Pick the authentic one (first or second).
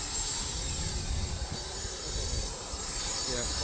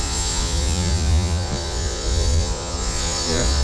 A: first